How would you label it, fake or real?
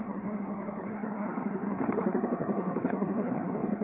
fake